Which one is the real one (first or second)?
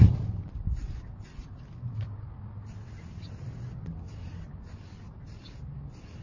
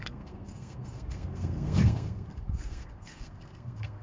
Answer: first